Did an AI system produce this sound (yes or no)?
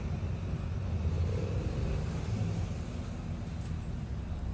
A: no